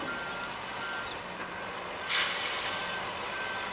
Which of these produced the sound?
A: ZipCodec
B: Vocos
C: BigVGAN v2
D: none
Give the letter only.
D